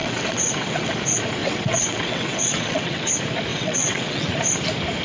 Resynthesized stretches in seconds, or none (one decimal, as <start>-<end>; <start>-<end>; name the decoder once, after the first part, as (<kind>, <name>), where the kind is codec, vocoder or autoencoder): 0.0-0.9 (vocoder, WaveNeXt); 1.4-3.1; 3.5-4.3